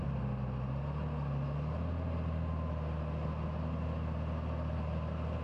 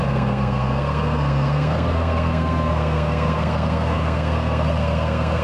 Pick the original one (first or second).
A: first